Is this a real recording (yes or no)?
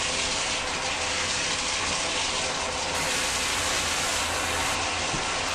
yes